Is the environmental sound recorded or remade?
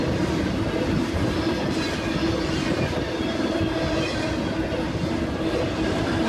recorded